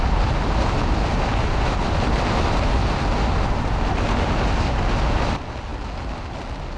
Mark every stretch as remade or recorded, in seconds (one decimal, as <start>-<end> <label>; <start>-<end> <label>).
0.0-6.8 recorded